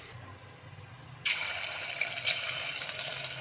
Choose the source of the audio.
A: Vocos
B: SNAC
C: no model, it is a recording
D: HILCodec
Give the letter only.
C